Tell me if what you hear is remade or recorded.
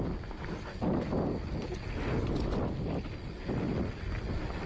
recorded